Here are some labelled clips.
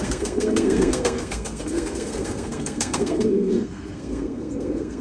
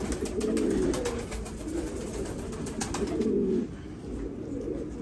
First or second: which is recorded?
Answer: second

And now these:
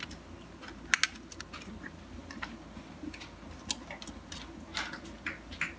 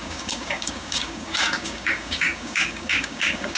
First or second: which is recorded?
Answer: first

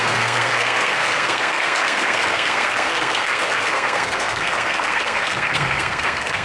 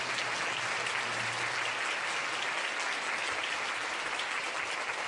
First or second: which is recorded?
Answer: second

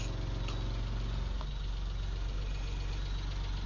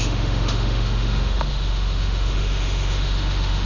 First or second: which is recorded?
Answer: first